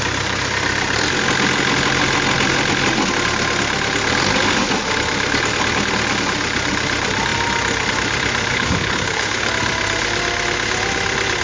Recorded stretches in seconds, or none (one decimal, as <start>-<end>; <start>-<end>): 0.0-8.5; 9.5-11.4